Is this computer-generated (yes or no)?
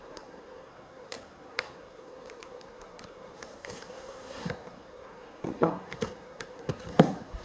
yes